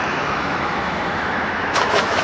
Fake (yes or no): yes